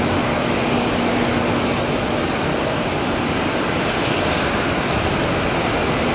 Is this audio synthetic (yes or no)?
no